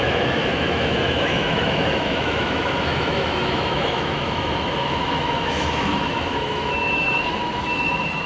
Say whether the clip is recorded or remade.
remade